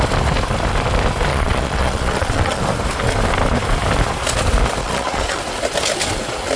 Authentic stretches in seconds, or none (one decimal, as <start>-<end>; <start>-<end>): 0.0-1.3; 2.6-4.8; 5.4-6.6

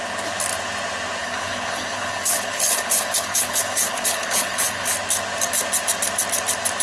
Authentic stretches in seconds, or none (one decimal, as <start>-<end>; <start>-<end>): 0.0-1.2; 4.9-6.8

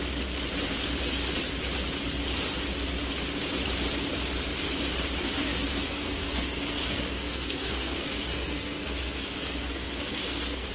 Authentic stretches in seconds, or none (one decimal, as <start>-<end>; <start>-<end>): 0.0-5.2

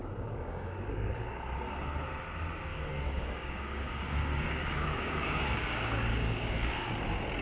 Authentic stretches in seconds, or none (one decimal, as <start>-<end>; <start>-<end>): 1.1-2.7; 6.9-7.4